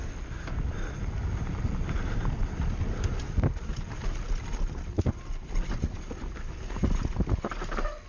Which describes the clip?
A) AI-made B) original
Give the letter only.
B